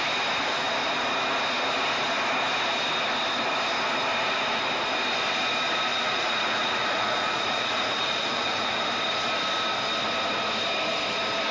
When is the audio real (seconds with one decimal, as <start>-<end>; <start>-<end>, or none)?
0.0-5.9; 8.8-11.5